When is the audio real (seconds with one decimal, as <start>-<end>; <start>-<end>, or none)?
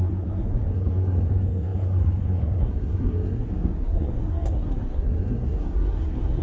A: none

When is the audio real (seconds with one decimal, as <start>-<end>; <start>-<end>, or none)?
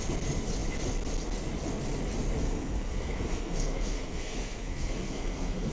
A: 0.0-2.4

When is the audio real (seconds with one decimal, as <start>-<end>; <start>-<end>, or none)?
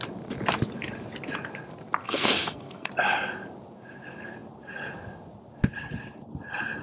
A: 0.0-2.0; 2.9-6.8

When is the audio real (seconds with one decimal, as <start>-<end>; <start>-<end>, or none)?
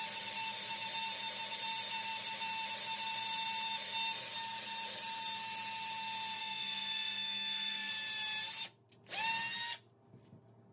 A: 0.0-6.4; 7.9-10.7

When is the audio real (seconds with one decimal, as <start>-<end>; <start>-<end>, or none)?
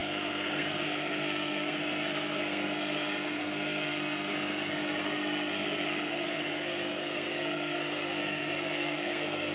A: none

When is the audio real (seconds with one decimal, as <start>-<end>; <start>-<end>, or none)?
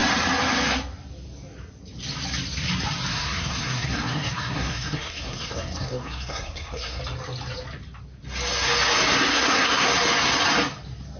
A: 0.0-3.1; 7.0-9.3; 9.9-11.2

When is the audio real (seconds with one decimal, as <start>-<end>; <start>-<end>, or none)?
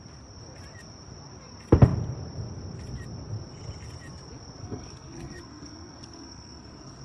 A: 0.0-4.6